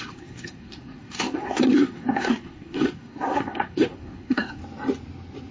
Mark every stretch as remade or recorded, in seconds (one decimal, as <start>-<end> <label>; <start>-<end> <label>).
0.0-4.6 remade; 4.6-5.5 recorded